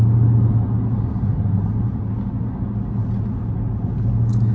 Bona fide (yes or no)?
yes